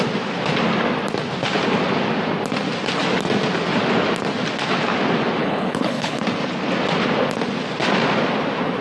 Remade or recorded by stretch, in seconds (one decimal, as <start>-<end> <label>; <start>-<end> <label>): 0.0-5.4 recorded; 5.4-6.2 remade; 6.2-8.8 recorded